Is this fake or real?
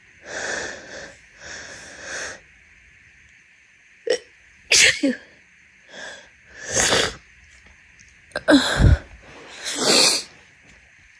real